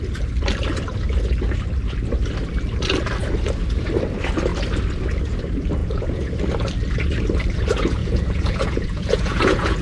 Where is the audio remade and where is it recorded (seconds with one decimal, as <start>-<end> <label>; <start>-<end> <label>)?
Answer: 0.0-5.8 recorded; 5.8-6.3 remade; 6.3-8.0 recorded; 8.0-9.8 remade